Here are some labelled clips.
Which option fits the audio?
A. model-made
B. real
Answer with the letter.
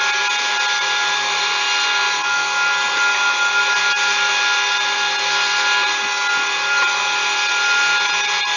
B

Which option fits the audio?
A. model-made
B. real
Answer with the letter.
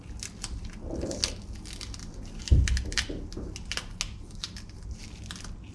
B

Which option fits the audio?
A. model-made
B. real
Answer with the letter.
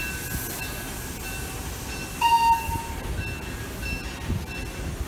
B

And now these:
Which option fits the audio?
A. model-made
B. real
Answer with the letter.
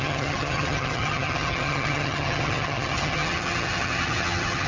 A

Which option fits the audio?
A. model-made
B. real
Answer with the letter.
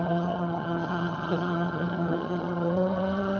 A